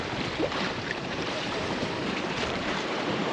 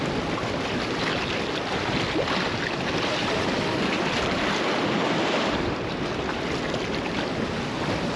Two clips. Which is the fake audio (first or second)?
first